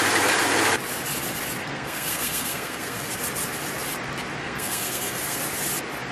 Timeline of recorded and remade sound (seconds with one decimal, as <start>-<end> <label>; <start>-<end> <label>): 0.0-1.6 recorded; 1.6-3.1 remade; 3.1-4.4 recorded; 4.4-5.4 remade; 5.4-6.1 recorded